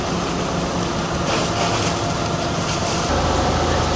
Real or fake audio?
real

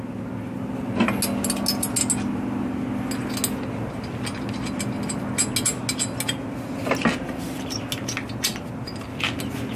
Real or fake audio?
real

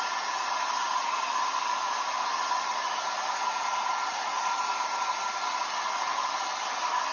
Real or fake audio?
real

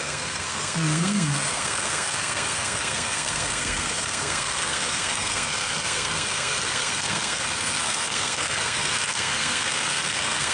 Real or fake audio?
fake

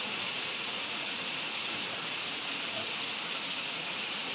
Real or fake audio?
fake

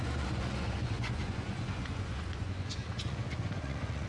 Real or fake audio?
fake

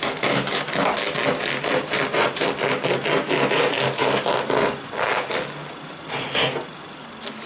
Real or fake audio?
real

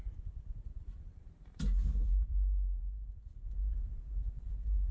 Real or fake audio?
fake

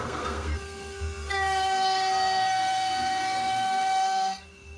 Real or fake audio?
fake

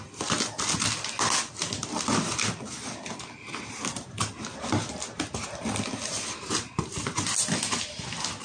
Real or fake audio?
real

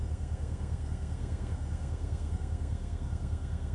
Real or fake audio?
fake